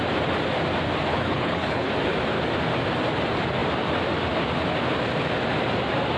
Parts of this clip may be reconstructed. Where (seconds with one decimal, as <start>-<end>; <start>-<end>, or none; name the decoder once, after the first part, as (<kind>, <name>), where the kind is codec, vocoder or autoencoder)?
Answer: 1.1-1.9 (codec, HILCodec)